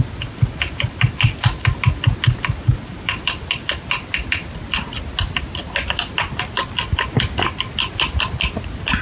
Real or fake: real